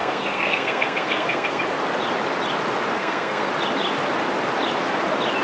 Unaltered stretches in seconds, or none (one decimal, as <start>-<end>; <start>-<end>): 1.6-3.0; 3.5-5.4